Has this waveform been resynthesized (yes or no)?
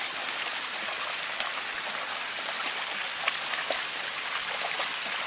no